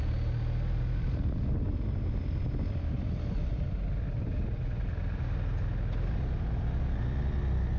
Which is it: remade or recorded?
recorded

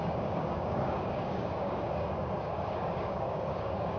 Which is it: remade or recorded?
remade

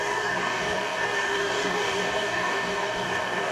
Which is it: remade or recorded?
remade